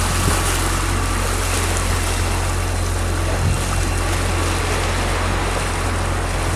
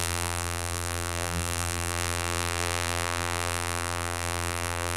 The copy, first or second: second